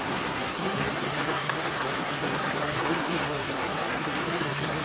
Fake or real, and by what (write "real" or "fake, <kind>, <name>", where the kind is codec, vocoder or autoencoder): fake, codec, SNAC